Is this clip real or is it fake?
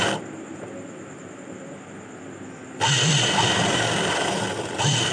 real